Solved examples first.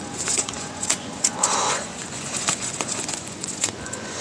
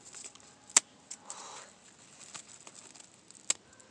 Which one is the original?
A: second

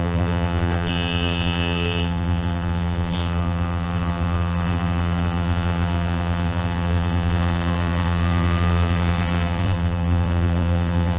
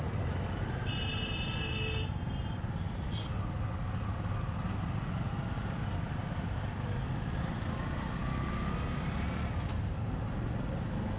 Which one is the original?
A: second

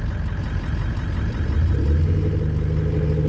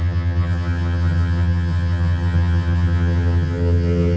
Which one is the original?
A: first